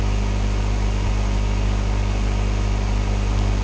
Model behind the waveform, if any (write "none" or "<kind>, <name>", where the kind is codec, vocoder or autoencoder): none